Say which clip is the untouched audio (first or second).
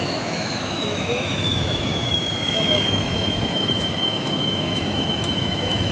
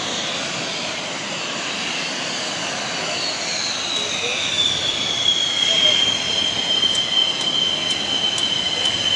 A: second